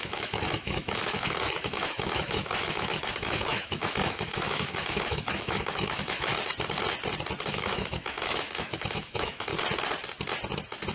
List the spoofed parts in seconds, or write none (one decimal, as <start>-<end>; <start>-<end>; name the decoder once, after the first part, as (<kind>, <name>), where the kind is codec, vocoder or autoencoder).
0.0-6.3 (autoencoder, DAC-VAE); 7.5-9.5